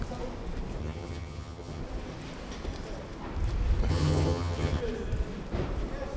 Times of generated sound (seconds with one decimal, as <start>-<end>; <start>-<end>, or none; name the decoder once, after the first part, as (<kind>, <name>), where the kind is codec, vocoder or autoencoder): 0.8-1.8 (vocoder, HiFi-GAN); 3.9-4.8